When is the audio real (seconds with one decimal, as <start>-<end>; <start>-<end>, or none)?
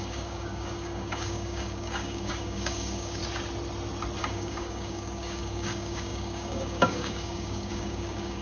3.2-4.2